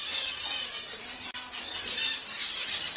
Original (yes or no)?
yes